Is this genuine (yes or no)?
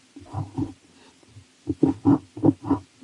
yes